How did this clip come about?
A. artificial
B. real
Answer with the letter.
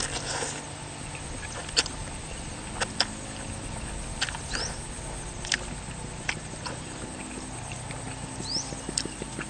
B